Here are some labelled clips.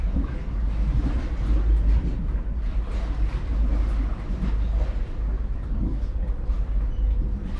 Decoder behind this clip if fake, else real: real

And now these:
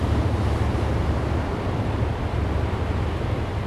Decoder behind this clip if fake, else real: fake, vocoder, BigVGAN v2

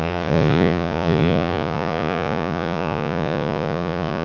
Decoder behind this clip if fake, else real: fake, vocoder, Vocos